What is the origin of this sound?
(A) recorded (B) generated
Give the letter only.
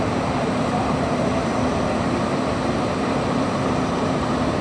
B